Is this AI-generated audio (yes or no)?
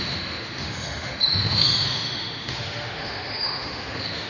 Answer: yes